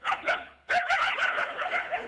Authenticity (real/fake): fake